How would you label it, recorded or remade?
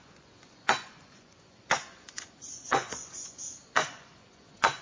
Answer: remade